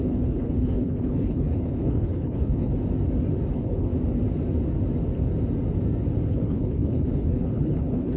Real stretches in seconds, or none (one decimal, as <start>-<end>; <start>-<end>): 2.7-3.5; 3.9-6.3